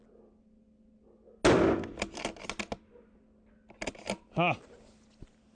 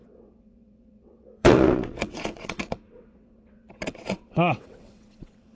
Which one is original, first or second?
first